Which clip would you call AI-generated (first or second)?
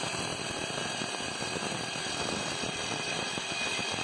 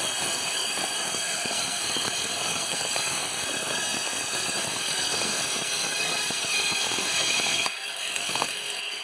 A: second